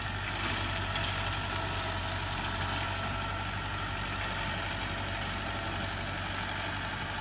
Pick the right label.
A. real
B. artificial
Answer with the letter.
A